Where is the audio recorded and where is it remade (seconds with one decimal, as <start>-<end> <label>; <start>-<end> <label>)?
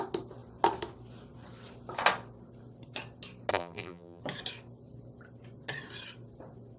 0.0-3.5 recorded; 3.5-4.2 remade; 4.2-6.8 recorded